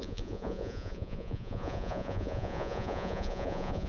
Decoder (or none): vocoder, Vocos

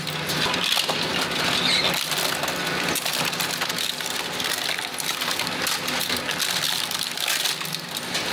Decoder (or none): none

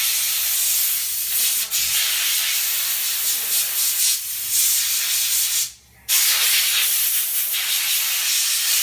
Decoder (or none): none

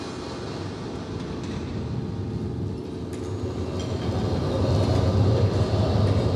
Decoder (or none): none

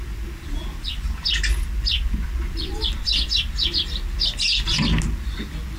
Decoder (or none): none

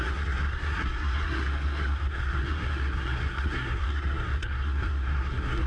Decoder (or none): codec, SNAC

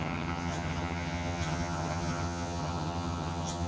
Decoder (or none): vocoder, HiFi-GAN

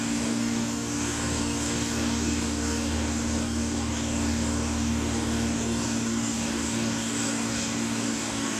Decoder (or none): codec, DAC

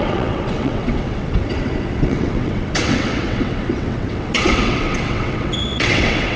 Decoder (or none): vocoder, WaveNeXt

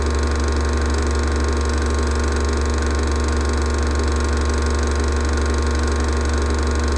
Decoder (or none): none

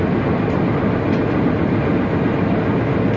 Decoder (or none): none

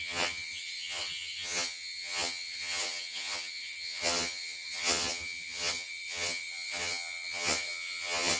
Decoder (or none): vocoder, HiFi-GAN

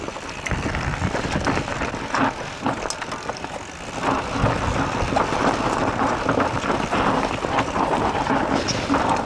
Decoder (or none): none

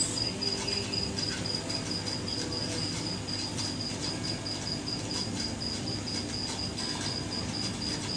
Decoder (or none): none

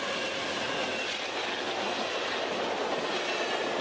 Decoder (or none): none